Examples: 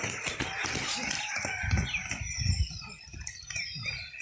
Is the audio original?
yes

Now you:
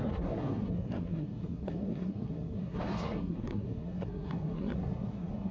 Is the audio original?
no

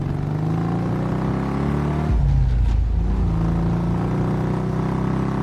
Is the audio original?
yes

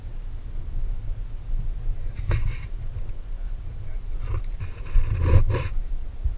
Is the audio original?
yes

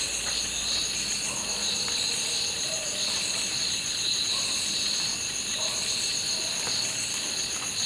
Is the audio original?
yes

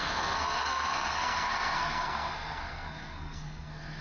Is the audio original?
no